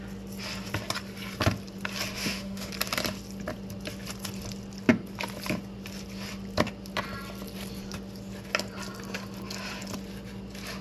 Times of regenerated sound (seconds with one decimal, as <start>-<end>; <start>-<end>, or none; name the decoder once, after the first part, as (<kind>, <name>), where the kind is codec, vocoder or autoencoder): 2.2-2.7 (autoencoder, DAC-VAE)